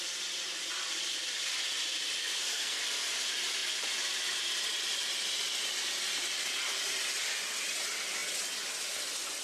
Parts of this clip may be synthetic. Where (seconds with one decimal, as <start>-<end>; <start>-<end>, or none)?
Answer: 2.2-2.8